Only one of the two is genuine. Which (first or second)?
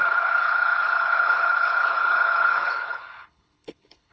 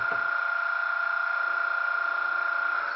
second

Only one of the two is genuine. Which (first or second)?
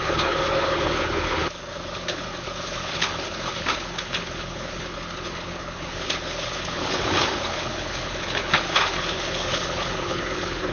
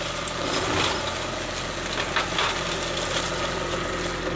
second